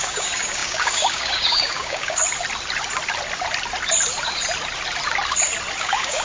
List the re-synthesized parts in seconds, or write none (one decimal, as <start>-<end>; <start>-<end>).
0.0-2.2; 5.8-6.2